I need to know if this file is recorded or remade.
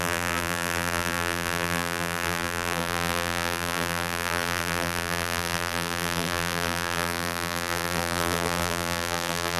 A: remade